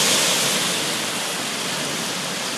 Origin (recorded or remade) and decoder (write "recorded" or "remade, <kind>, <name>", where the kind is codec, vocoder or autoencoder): recorded